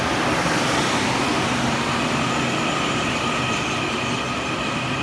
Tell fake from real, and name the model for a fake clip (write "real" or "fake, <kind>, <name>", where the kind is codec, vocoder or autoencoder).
real